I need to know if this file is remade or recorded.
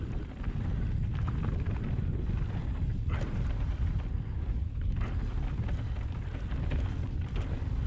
recorded